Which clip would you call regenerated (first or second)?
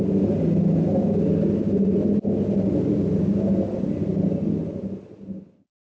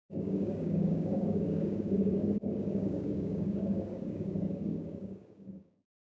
second